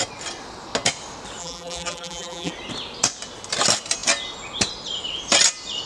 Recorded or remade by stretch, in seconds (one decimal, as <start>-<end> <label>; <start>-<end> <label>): 0.0-1.4 recorded; 1.4-2.5 remade; 2.5-5.9 recorded